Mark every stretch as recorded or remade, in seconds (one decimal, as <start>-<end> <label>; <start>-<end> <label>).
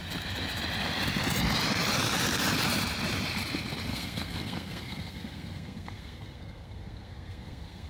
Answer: 0.0-3.9 recorded; 3.9-7.9 remade